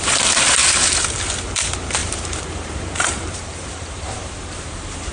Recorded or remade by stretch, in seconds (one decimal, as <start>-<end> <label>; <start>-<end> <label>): 0.0-2.0 recorded; 2.0-5.1 remade